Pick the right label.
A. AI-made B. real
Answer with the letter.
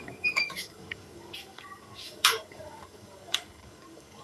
A